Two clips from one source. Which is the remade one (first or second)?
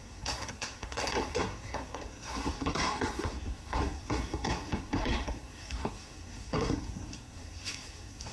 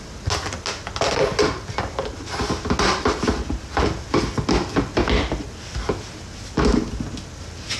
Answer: first